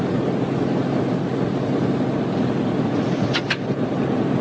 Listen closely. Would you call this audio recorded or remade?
recorded